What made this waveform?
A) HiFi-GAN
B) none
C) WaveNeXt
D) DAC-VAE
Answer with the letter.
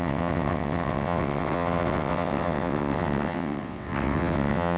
C